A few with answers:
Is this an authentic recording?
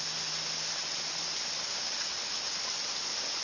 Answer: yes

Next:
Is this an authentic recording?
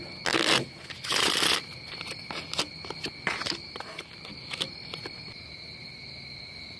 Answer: yes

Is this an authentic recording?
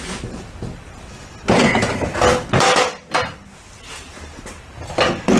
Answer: yes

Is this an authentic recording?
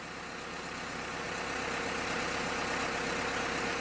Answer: yes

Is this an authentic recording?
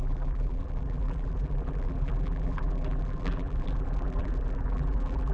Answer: no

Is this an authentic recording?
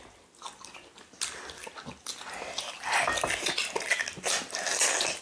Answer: yes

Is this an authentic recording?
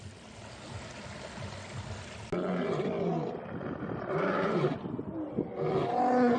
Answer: yes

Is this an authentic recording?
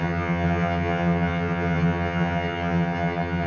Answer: no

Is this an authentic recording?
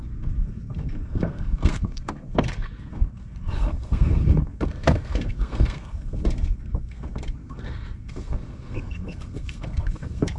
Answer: no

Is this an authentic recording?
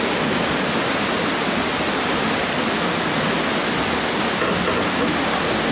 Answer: yes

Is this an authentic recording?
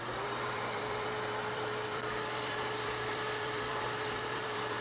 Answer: no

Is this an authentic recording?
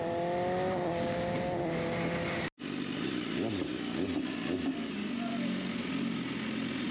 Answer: yes